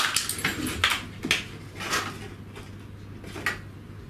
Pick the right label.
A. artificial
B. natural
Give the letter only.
B